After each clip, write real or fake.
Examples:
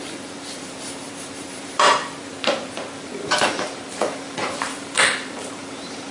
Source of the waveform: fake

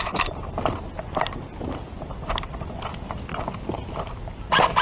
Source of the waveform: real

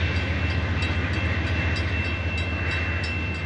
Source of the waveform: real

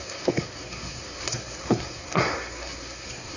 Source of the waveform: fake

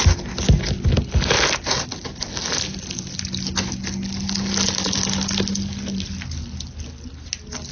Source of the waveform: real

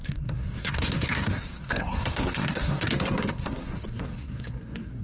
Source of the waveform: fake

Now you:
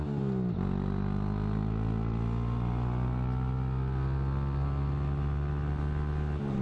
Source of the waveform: real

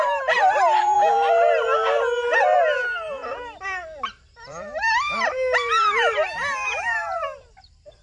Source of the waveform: fake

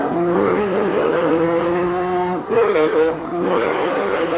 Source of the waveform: fake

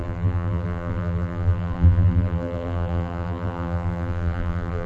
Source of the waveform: fake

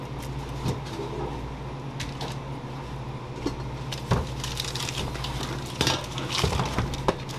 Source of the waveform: real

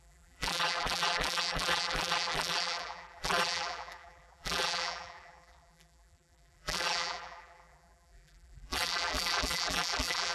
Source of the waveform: fake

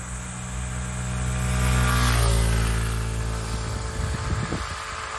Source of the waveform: real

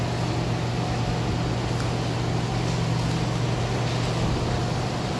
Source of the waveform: real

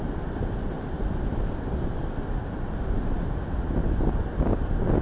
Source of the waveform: real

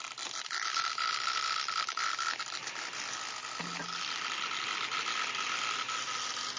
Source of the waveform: real